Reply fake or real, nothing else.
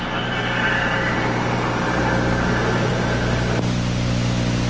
real